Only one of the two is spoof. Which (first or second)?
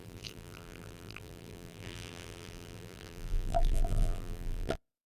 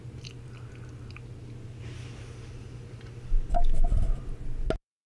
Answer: first